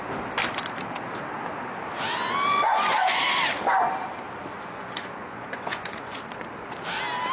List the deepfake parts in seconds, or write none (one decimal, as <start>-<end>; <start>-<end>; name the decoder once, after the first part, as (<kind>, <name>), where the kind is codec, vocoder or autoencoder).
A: 2.5-3.2 (vocoder, Vocos); 4.5-6.2